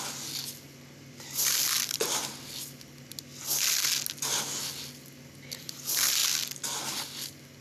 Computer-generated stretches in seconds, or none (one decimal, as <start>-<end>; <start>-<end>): none